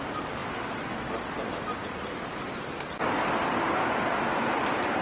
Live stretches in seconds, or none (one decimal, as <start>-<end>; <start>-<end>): 0.0-5.0